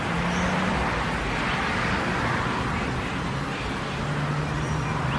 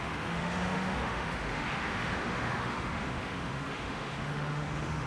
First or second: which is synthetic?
second